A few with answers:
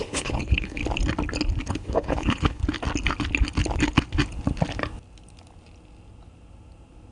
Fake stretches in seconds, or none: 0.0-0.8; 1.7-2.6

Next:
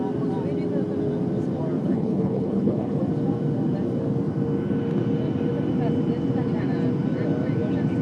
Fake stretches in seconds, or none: 1.8-3.0